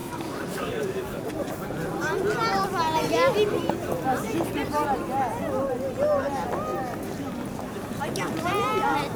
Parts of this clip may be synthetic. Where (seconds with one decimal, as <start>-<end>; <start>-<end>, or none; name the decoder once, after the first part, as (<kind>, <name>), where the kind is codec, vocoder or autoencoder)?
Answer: 0.0-1.2 (codec, DAC)